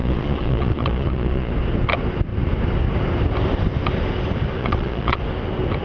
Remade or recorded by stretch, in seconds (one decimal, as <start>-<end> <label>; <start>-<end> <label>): 0.0-1.5 remade; 1.5-4.6 recorded; 4.6-5.2 remade; 5.2-5.8 recorded